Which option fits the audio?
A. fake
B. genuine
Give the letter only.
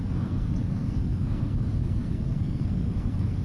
A